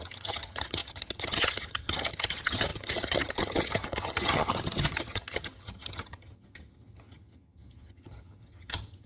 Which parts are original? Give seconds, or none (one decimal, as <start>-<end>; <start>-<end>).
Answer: none